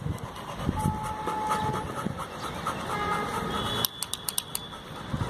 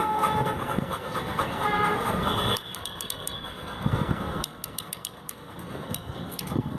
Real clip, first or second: first